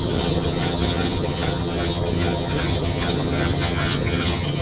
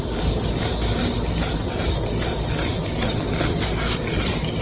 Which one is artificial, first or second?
first